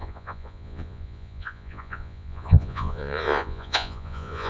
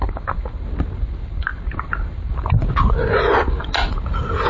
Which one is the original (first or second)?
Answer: second